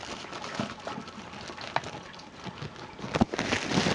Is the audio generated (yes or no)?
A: no